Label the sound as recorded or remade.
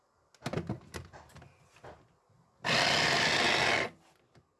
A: recorded